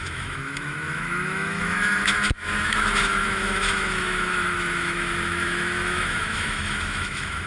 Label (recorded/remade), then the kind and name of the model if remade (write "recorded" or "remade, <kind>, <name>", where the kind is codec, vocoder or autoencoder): remade, autoencoder, DAC-VAE